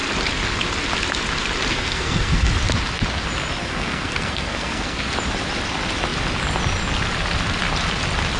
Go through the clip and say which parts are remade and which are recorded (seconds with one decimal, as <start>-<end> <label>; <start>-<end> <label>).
0.0-1.7 recorded; 1.7-2.5 remade; 2.5-3.6 recorded; 3.6-5.1 remade; 5.1-8.4 recorded